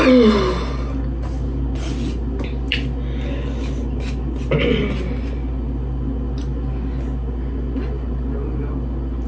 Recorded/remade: recorded